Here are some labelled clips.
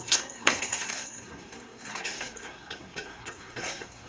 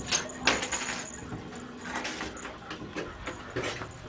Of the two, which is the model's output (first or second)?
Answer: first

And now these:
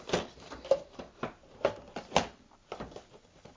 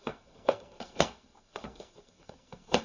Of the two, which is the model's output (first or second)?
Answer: second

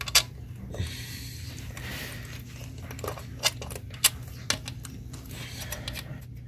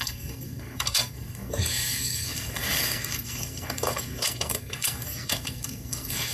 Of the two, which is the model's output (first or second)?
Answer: second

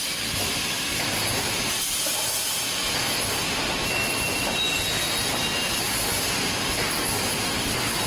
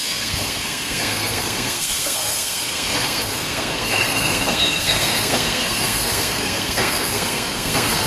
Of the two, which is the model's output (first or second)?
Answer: second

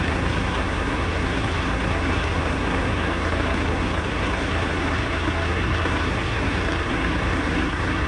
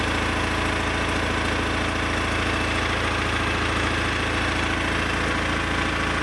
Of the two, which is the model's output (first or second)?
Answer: first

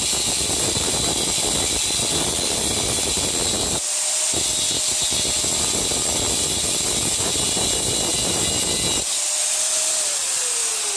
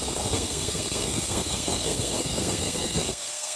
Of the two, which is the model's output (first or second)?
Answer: second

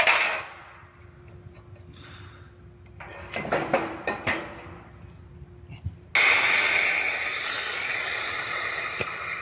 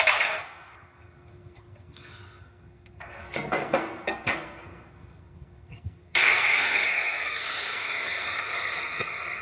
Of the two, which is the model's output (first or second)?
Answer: second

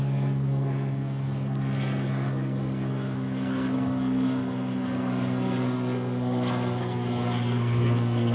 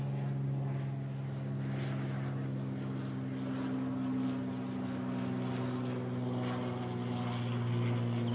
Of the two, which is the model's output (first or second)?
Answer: first